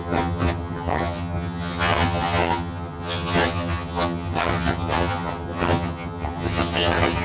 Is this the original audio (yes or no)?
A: no